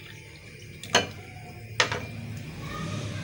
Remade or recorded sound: recorded